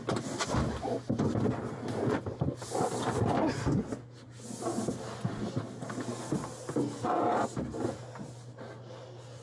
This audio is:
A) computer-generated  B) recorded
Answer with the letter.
B